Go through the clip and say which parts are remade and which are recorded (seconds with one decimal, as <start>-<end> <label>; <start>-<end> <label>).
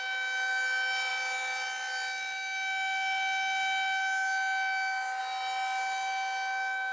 0.0-6.9 recorded